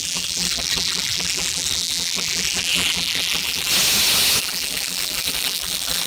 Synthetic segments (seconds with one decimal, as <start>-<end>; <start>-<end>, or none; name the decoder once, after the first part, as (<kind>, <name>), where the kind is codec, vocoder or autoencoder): 0.0-3.7 (vocoder, BigVGAN v2); 4.4-6.1